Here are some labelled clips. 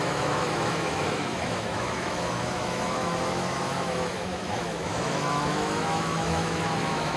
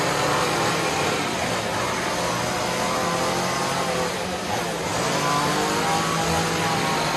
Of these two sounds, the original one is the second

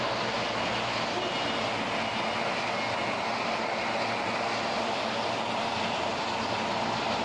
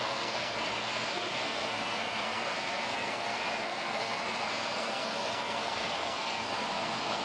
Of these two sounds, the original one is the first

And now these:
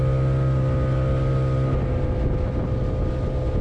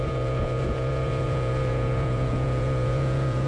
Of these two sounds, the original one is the first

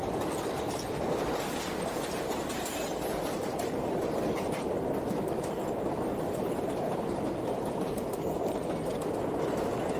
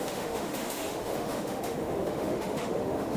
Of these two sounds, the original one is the first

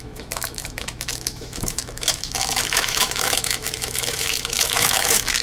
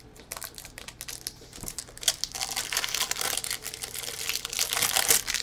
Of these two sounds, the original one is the second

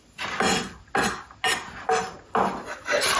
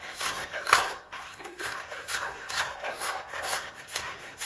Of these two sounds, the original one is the first